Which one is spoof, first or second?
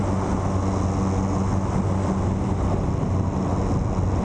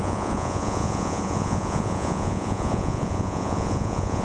second